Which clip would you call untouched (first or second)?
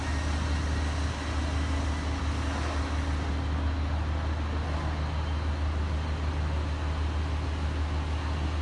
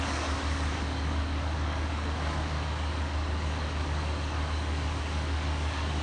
first